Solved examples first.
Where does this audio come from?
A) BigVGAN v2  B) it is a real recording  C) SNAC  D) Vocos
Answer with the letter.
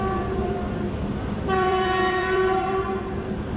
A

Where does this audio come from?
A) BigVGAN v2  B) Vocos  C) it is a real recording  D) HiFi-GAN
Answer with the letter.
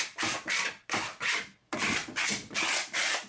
A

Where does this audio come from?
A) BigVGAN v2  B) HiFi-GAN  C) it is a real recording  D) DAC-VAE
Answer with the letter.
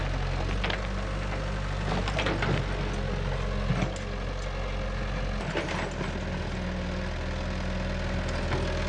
C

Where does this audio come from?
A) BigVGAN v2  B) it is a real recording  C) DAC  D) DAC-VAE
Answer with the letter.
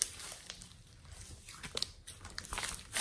B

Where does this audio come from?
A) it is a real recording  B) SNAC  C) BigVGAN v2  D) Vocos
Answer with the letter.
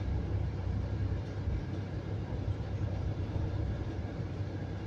C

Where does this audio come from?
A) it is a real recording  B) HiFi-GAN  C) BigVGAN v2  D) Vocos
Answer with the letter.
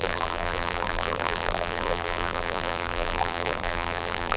C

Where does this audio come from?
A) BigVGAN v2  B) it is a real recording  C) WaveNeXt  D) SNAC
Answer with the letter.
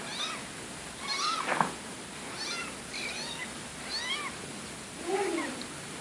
B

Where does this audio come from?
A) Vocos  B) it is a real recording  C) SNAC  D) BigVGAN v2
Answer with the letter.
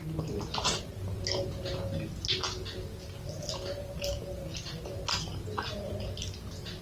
B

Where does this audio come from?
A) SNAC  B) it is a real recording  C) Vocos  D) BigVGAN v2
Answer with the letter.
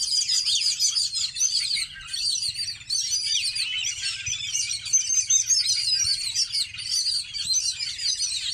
B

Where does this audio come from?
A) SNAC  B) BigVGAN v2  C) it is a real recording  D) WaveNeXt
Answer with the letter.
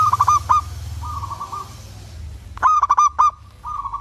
C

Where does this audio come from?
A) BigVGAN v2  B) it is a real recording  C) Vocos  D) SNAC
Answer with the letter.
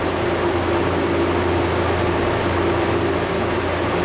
B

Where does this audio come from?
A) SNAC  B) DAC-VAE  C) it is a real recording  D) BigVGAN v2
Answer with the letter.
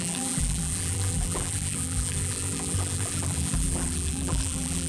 D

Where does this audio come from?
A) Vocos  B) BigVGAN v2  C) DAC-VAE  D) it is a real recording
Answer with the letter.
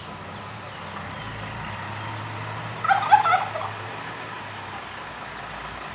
D